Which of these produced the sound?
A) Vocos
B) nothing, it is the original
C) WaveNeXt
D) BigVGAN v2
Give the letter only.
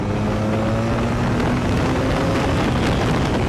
B